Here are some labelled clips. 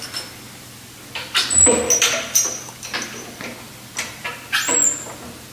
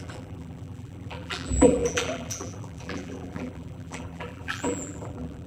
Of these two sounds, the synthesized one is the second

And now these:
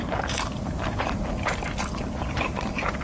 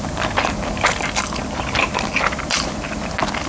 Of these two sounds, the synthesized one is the first